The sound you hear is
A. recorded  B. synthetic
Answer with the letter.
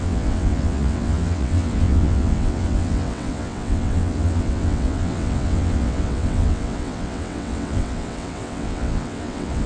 B